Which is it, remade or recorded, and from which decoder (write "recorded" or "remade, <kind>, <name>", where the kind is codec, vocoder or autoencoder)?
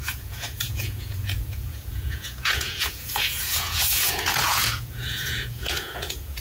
remade, vocoder, Vocos